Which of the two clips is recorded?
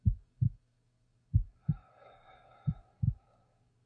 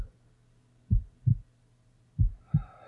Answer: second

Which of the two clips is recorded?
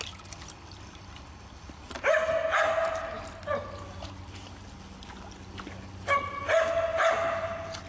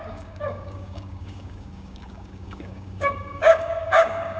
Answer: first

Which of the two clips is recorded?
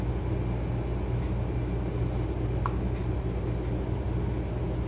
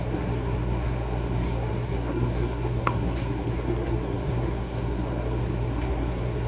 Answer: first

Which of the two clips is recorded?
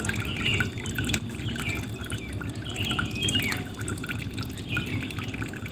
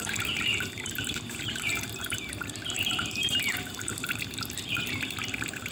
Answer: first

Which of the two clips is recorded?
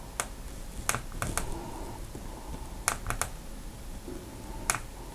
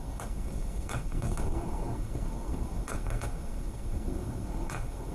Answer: first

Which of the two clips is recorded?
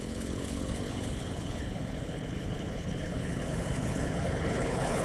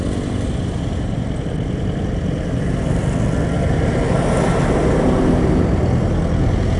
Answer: second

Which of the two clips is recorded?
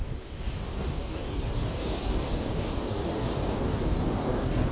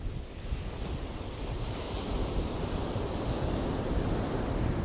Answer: second